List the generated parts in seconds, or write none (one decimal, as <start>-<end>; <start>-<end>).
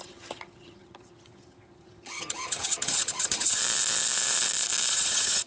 0.0-3.6; 4.9-5.5